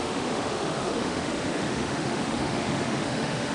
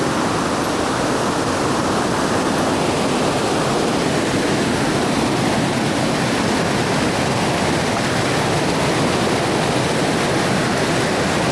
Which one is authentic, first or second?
second